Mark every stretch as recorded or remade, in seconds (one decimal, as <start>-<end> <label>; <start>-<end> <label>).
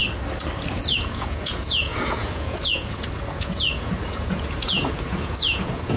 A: 0.0-0.7 recorded; 0.7-6.0 remade